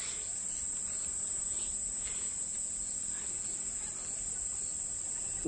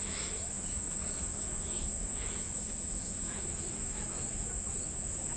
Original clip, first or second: first